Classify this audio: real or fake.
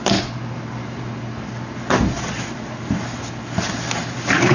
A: real